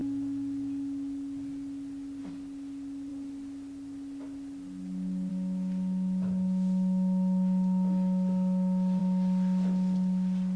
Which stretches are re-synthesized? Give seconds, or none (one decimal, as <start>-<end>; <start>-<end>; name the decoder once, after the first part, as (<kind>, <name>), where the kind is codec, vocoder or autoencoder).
none